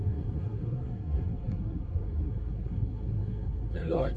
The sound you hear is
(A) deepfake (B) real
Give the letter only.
A